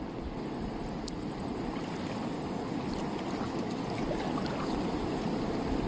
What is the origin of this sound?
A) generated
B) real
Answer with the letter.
B